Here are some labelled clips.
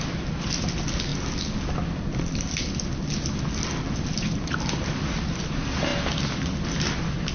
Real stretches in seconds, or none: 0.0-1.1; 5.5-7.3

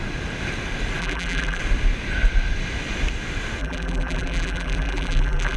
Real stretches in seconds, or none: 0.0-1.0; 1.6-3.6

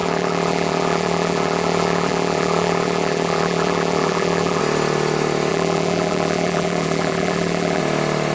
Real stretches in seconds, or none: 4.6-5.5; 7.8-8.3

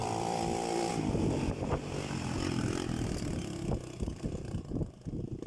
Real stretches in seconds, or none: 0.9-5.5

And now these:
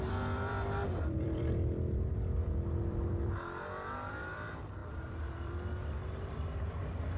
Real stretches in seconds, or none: none